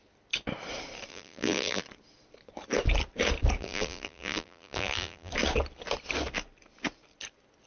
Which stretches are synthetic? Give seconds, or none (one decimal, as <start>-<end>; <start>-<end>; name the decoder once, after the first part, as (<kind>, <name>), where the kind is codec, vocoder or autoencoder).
1.1-1.8 (vocoder, BigVGAN v2); 3.6-5.3